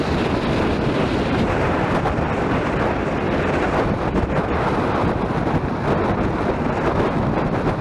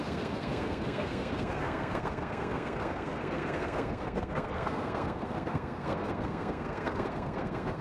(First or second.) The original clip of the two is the first